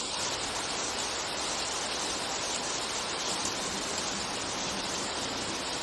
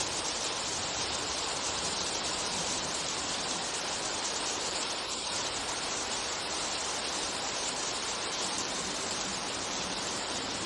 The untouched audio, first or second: first